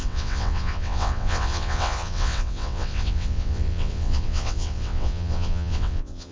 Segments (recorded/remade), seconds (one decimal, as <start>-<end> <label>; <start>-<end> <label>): 0.0-6.3 remade